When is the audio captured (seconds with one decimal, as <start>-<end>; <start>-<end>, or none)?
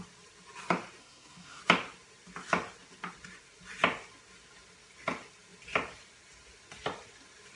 0.0-1.0; 1.6-7.6